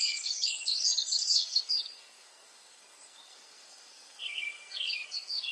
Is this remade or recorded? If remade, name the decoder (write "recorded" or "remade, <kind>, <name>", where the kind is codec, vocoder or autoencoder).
remade, codec, SNAC